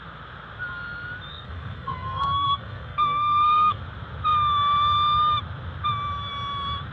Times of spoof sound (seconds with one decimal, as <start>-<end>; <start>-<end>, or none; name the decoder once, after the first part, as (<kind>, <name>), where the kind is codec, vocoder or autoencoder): 1.3-3.8 (codec, SNAC)